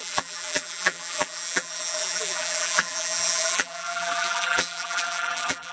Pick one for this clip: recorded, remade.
remade